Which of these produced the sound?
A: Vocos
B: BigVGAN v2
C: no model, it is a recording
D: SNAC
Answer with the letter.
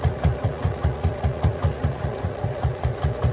A